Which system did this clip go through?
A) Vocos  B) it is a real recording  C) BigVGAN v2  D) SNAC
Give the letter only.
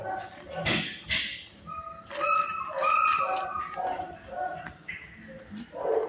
B